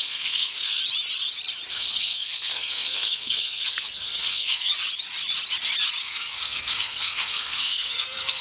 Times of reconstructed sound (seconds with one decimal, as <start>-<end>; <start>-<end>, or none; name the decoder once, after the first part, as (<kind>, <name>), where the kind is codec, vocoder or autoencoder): 0.0-0.8 (codec, SNAC); 1.7-4.7; 6.0-8.4